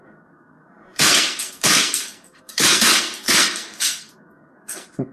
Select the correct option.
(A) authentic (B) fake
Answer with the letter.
B